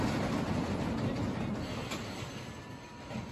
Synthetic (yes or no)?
no